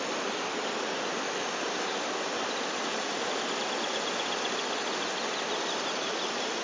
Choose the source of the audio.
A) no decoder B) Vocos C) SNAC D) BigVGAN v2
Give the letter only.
A